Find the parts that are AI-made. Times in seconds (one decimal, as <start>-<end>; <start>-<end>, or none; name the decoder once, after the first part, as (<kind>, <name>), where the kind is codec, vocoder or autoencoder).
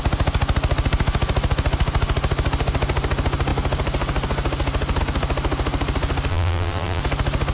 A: 6.3-7.0 (vocoder, BigVGAN v2)